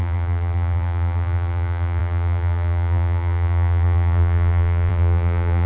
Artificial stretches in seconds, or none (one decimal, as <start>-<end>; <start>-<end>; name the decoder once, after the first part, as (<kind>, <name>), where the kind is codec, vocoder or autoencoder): 0.0-5.7 (vocoder, BigVGAN v2)